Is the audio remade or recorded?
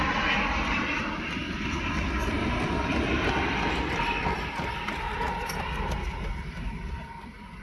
recorded